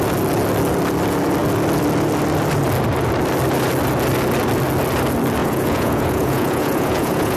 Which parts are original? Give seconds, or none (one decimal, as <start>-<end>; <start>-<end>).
0.0-5.4